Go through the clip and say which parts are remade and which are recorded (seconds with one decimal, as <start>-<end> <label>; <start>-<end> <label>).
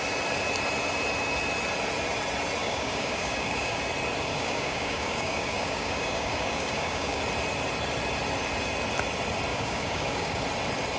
0.0-2.6 recorded; 2.6-3.8 remade; 3.8-4.3 recorded; 4.3-7.2 remade; 7.2-9.5 recorded; 9.5-10.4 remade; 10.4-11.0 recorded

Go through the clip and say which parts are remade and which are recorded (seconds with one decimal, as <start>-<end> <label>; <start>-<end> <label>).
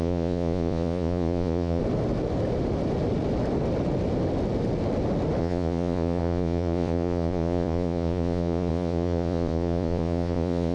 0.0-1.8 remade; 1.8-5.4 recorded; 5.4-10.7 remade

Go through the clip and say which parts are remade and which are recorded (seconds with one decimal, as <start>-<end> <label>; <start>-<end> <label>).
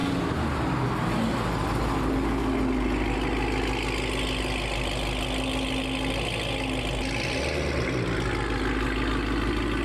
0.0-9.8 recorded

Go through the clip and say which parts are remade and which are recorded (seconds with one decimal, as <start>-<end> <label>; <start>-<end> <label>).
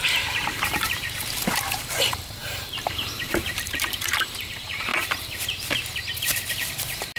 0.0-4.9 remade; 4.9-6.5 recorded; 6.5-7.2 remade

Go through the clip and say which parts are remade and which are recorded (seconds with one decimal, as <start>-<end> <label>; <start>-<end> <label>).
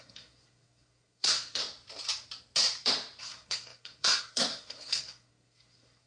0.0-1.6 remade; 1.6-3.2 recorded; 3.2-6.1 remade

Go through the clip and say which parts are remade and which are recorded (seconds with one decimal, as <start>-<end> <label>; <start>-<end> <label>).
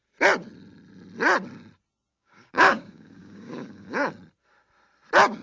0.0-2.1 recorded; 2.1-4.1 remade; 4.1-5.4 recorded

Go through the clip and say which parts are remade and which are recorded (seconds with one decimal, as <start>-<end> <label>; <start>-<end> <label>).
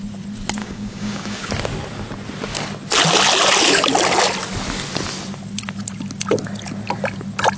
0.0-0.6 recorded; 0.6-1.5 remade; 1.5-7.6 recorded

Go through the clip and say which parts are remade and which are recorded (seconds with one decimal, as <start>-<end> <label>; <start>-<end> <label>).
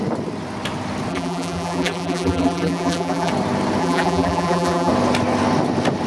0.0-1.1 recorded; 1.1-3.3 remade; 3.3-3.8 recorded; 3.8-4.9 remade; 4.9-6.1 recorded